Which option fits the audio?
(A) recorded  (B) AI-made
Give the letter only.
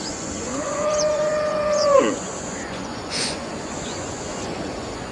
B